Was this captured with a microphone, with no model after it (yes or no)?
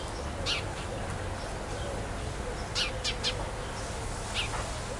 yes